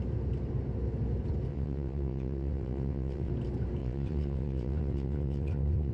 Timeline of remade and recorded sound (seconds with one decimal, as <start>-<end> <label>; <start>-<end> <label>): 0.0-1.5 recorded; 1.5-3.3 remade; 3.3-3.8 recorded; 3.8-5.9 remade